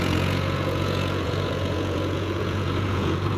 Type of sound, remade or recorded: remade